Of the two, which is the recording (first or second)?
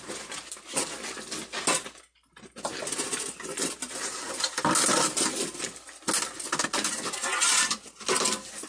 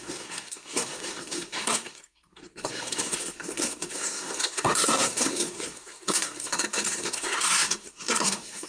first